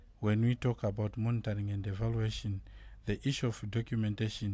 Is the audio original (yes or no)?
yes